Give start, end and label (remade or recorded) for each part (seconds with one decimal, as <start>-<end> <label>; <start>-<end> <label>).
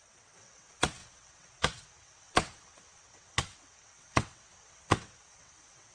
0.0-5.9 remade